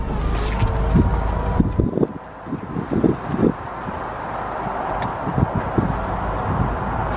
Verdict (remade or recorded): recorded